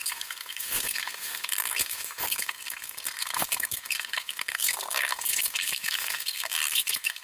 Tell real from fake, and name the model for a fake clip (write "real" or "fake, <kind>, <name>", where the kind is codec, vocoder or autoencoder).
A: fake, codec, SNAC